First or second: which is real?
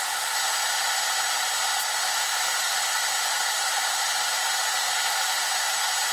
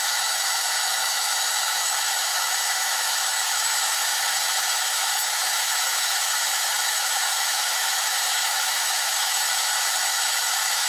first